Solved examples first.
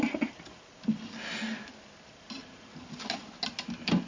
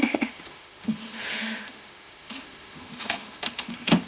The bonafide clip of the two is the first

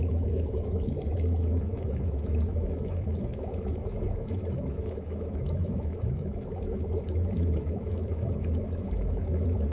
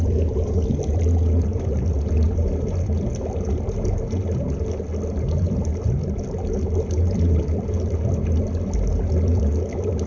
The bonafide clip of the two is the second